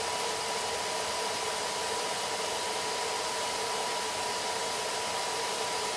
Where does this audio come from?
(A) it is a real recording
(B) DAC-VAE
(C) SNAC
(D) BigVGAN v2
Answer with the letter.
A